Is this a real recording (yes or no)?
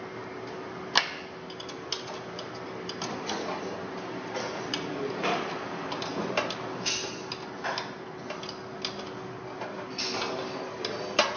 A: yes